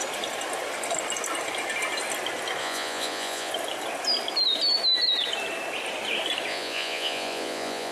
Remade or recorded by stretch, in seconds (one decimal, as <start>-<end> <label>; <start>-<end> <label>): 0.0-2.6 recorded; 2.6-3.5 remade; 3.5-6.5 recorded; 6.5-7.9 remade